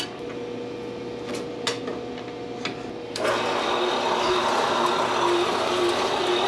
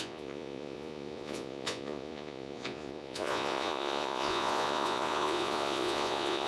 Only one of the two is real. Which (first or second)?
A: first